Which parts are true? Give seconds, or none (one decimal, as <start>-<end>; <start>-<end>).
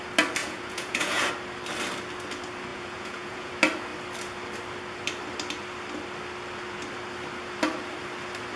0.0-0.4; 1.3-2.7; 3.5-8.6